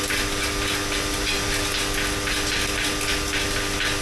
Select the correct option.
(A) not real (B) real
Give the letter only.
B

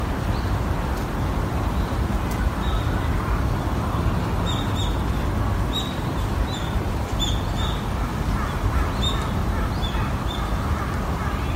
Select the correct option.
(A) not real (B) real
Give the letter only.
B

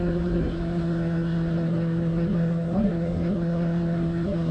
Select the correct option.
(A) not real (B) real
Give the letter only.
A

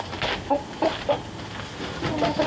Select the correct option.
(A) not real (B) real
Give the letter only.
B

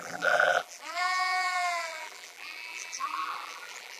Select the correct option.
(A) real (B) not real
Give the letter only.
B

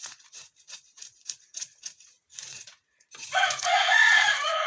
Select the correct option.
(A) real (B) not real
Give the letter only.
B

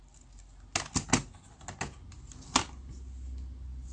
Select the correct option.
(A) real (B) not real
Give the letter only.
A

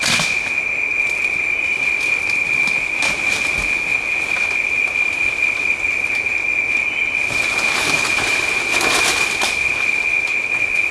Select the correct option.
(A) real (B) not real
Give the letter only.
A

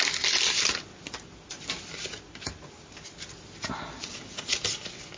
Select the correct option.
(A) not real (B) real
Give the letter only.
B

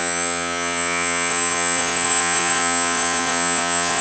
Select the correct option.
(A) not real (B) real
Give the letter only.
A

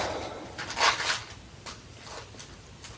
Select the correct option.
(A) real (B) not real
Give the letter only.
A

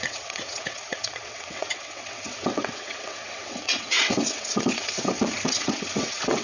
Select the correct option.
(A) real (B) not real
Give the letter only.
B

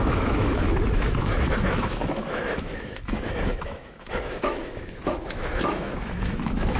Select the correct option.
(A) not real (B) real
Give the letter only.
A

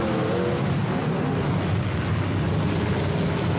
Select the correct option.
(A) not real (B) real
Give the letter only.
B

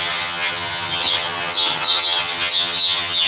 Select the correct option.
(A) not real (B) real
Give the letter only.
A